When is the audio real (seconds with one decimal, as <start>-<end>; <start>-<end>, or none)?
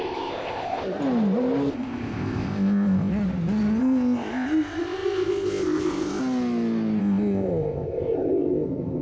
1.0-1.7; 3.1-3.8; 6.2-7.0